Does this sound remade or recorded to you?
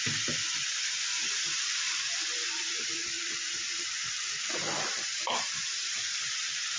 remade